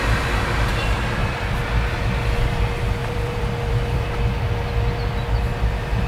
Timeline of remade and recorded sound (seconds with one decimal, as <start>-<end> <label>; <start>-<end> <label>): 0.0-1.2 recorded; 1.2-1.8 remade; 1.8-3.0 recorded; 3.0-4.2 remade; 4.2-6.1 recorded